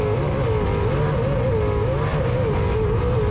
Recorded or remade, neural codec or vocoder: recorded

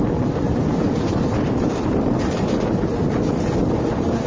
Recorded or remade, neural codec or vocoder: recorded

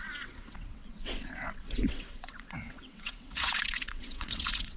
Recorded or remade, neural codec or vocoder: remade, vocoder, WaveNeXt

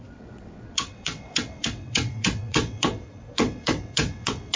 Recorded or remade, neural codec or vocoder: remade, vocoder, WaveNeXt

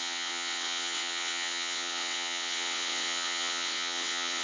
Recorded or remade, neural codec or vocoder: remade, vocoder, WaveNeXt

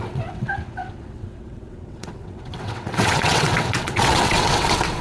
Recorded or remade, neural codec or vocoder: remade, vocoder, WaveNeXt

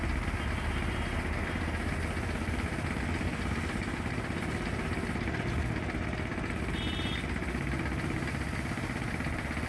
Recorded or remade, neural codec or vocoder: recorded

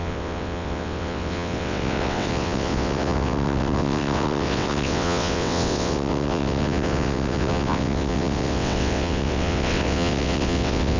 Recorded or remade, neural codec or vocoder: remade, vocoder, WaveNeXt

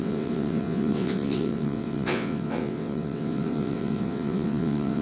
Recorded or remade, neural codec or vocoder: remade, vocoder, WaveNeXt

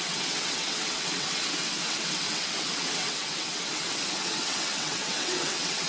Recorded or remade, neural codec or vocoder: remade, vocoder, WaveNeXt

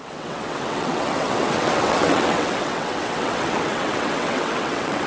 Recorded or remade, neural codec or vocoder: remade, vocoder, WaveNeXt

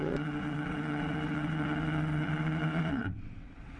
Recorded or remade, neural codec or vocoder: remade, vocoder, WaveNeXt